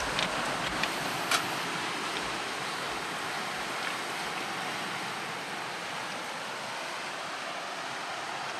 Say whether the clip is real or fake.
real